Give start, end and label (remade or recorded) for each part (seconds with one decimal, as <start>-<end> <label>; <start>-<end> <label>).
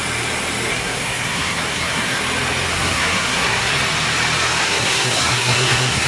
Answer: 0.0-0.7 recorded; 0.7-2.2 remade; 2.2-2.7 recorded; 2.7-3.7 remade; 3.7-4.6 recorded; 4.6-6.1 remade